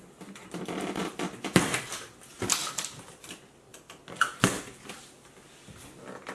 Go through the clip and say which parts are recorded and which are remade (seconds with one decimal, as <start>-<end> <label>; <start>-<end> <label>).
0.0-1.0 recorded; 1.0-1.9 remade; 1.9-2.6 recorded; 2.6-3.3 remade; 3.3-6.3 recorded